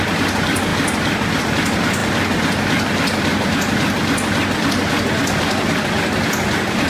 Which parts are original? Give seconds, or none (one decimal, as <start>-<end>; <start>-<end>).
0.0-6.9

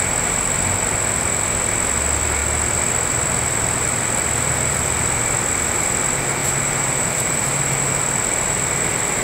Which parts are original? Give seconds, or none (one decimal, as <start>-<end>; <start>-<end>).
0.0-6.4; 7.9-9.2